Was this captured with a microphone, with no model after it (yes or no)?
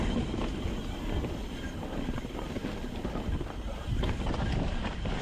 yes